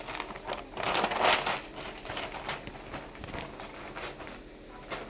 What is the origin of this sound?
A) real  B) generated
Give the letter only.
A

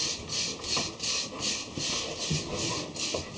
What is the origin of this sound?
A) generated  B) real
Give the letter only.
B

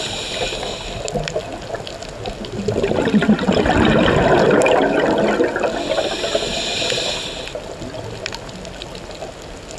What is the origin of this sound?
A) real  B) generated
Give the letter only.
A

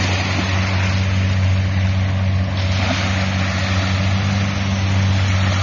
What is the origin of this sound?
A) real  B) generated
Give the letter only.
A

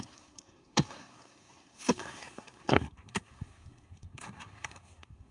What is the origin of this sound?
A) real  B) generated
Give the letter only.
B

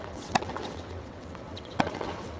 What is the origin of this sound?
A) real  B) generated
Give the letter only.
B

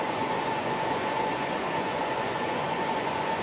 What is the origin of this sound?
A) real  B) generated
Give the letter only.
B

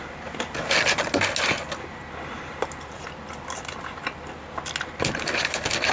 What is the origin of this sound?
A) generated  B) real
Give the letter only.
B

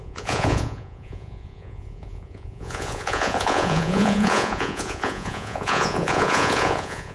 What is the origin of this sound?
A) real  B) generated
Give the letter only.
B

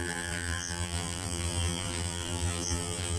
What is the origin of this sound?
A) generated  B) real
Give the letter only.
A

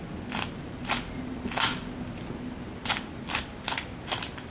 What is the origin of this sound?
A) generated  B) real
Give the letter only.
B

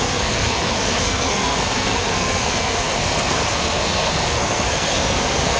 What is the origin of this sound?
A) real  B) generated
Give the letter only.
B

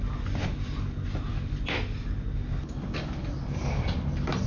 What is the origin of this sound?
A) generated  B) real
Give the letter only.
B